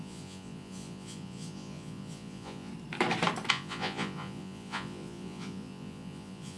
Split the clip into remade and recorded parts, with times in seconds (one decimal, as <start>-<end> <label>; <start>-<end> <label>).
0.0-2.7 remade; 2.7-3.5 recorded; 3.5-6.6 remade